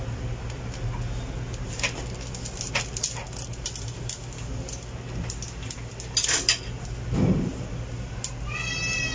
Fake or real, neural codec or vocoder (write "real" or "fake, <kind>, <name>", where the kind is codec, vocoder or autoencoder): real